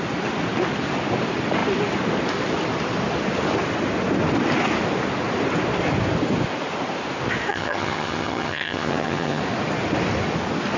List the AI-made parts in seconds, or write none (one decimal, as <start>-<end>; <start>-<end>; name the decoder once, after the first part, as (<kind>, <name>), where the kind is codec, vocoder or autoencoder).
7.5-9.4 (vocoder, HiFi-GAN)